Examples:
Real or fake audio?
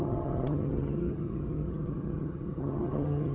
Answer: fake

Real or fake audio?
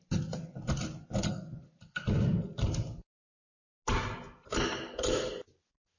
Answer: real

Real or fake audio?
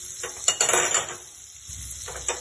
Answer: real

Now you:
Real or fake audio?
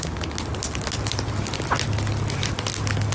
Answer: real